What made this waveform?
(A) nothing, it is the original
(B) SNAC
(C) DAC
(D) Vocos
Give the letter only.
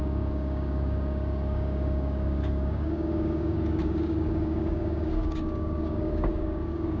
C